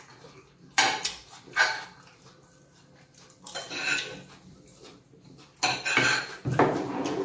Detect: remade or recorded recorded